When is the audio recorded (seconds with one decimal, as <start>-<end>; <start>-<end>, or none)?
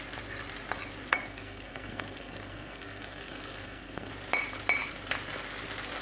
0.0-1.1; 4.1-6.0